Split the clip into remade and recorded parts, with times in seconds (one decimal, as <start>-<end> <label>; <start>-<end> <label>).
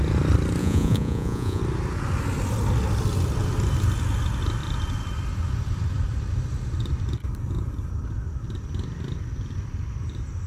0.0-0.6 recorded; 0.6-1.6 remade; 1.6-10.5 recorded